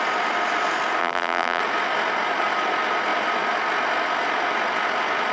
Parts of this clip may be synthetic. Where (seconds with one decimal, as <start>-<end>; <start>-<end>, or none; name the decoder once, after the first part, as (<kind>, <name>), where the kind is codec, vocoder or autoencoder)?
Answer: 1.0-1.6 (vocoder, BigVGAN v2)